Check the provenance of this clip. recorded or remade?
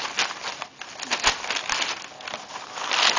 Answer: recorded